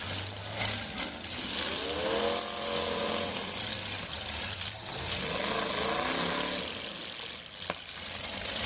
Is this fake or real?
real